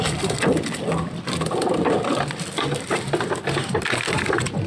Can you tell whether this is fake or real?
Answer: fake